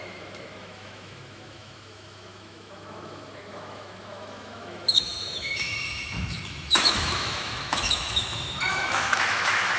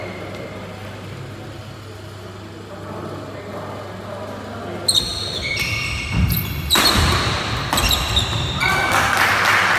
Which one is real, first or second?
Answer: second